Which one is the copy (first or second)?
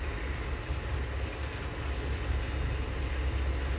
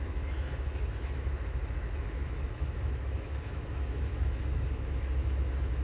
second